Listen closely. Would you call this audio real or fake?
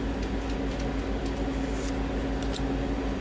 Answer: real